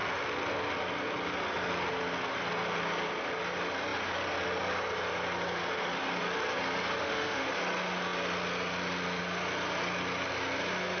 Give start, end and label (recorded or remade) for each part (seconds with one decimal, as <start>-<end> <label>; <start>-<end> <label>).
0.0-7.0 recorded; 7.0-7.5 remade; 7.5-11.0 recorded